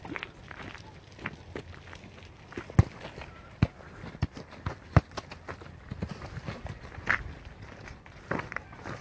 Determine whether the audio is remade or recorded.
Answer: recorded